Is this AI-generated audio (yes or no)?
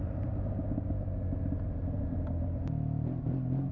yes